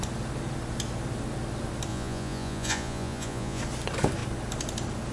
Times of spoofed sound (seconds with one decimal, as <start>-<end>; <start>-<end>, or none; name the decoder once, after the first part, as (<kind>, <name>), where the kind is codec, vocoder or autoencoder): 1.9-3.6 (vocoder, Vocos)